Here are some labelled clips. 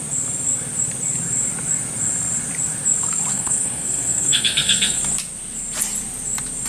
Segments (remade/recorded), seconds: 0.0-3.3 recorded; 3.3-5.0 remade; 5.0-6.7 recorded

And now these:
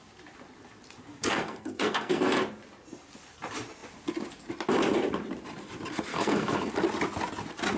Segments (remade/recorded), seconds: 0.0-1.1 recorded; 1.1-2.4 remade; 2.4-6.1 recorded; 6.1-6.7 remade; 6.7-7.8 recorded

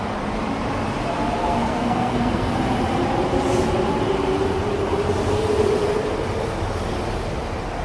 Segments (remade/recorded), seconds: 0.0-1.4 recorded; 1.4-2.5 remade; 2.5-7.8 recorded

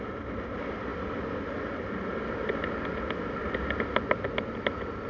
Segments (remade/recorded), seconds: 0.0-5.1 recorded

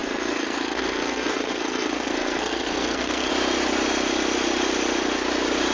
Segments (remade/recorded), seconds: 0.0-3.3 remade; 3.3-5.7 recorded

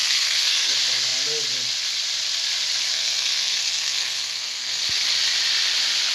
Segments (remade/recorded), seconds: 0.0-0.7 remade; 0.7-2.9 recorded; 2.9-4.8 remade; 4.8-6.1 recorded

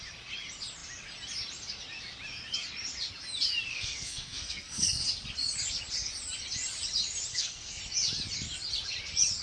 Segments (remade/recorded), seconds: 0.0-3.7 recorded; 3.7-5.0 remade; 5.0-7.3 recorded; 7.3-7.8 remade; 7.8-9.4 recorded